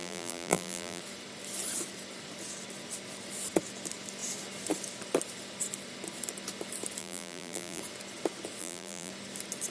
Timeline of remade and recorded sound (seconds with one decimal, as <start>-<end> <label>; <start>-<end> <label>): 0.0-1.0 remade; 1.0-7.0 recorded; 7.0-7.8 remade; 7.8-8.6 recorded; 8.6-9.1 remade; 9.1-9.7 recorded